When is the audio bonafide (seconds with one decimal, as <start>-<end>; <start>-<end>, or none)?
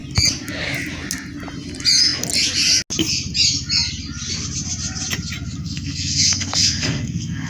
0.0-5.6